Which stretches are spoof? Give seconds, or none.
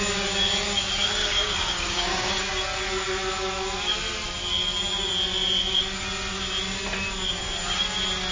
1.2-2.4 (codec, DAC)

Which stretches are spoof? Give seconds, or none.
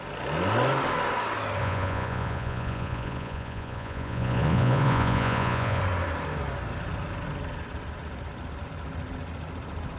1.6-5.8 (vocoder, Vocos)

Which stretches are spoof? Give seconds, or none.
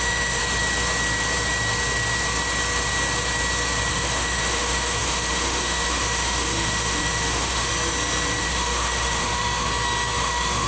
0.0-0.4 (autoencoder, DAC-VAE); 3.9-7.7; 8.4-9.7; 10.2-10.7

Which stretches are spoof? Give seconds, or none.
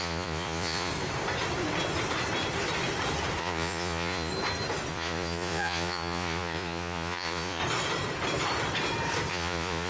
0.0-0.9 (vocoder, Vocos); 3.4-4.3; 4.9-7.6; 9.3-9.9